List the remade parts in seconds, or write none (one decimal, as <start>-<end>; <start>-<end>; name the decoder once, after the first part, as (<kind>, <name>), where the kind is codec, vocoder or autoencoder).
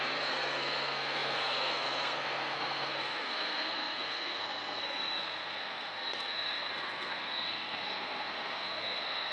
0.0-9.3 (codec, SNAC)